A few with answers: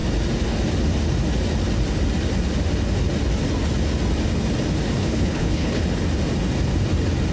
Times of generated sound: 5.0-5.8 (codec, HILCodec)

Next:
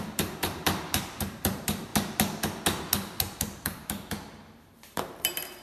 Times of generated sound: 0.0-1.9 (vocoder, BigVGAN v2); 3.4-3.8; 4.7-5.6

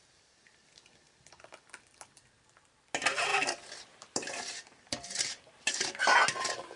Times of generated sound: 3.3-5.7 (vocoder, BigVGAN v2)